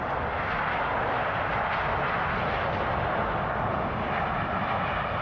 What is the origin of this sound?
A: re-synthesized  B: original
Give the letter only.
B